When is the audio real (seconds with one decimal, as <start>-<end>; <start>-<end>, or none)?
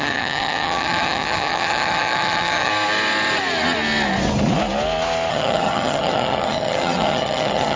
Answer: 2.7-5.3